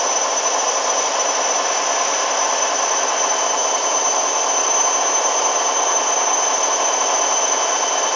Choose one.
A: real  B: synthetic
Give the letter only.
A